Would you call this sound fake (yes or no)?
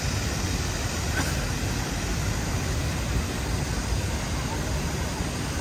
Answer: no